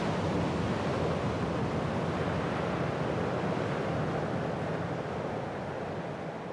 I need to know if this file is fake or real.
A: real